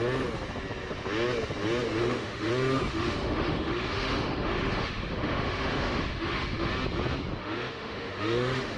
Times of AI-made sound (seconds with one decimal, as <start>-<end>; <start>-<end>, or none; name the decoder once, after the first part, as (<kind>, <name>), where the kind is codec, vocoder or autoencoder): 2.0-2.5 (autoencoder, DAC-VAE); 2.9-6.7; 7.4-8.8